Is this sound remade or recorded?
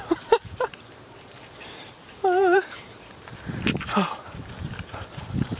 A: remade